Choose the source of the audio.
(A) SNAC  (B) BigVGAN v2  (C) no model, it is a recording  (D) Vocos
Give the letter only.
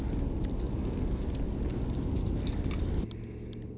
C